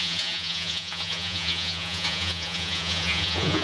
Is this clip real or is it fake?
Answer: fake